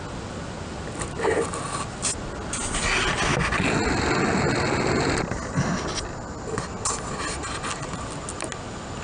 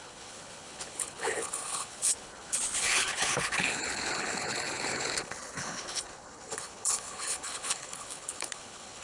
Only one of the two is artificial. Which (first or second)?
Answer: second